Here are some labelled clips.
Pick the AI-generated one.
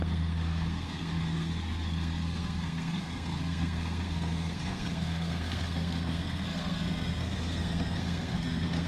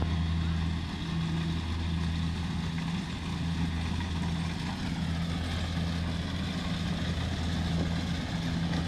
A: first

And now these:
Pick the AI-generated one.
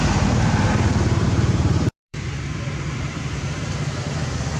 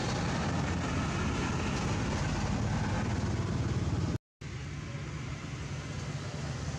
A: first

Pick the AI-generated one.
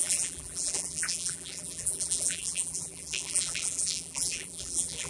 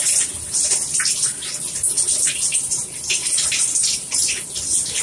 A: first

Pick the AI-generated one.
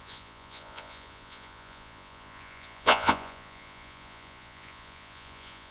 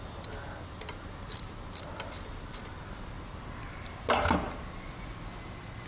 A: first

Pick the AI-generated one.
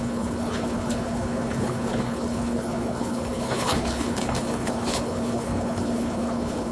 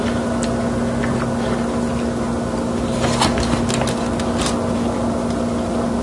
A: first